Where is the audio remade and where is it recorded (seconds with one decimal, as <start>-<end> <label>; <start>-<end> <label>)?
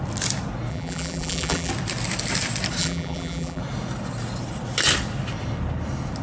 0.0-0.7 recorded; 0.7-1.7 remade; 1.7-2.8 recorded; 2.8-3.6 remade; 3.6-6.2 recorded